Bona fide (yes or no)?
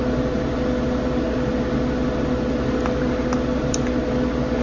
yes